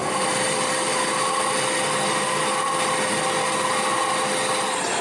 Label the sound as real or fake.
real